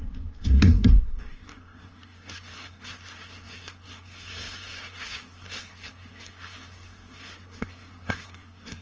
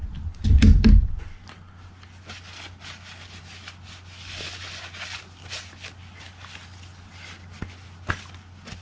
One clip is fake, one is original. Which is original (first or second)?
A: second